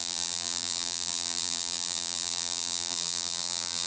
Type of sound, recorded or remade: remade